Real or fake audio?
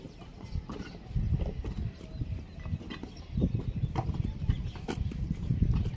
real